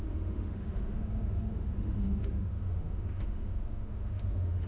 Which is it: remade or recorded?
remade